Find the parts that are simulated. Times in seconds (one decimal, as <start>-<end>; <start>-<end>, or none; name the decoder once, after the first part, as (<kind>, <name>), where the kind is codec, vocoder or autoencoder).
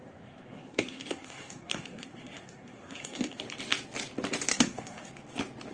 0.0-3.4 (codec, SNAC); 4.5-5.1